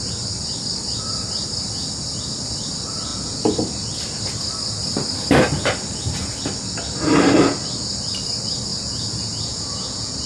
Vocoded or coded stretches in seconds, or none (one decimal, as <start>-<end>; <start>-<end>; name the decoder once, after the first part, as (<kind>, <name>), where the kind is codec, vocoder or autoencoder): 8.7-10.3 (vocoder, Vocos)